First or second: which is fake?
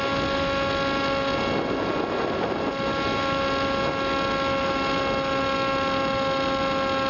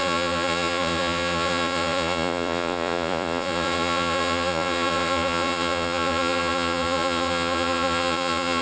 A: second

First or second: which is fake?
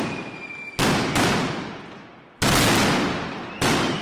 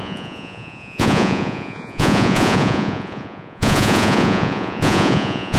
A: second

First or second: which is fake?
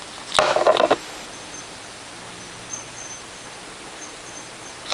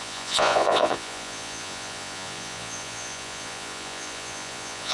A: second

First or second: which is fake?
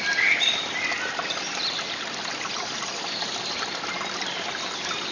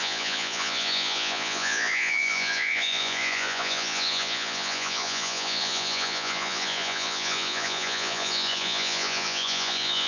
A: second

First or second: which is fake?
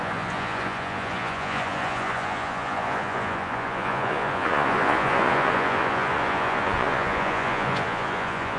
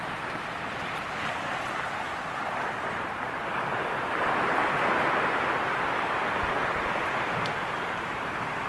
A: first